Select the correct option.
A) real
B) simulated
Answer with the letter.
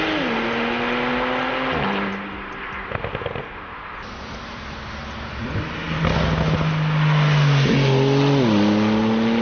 A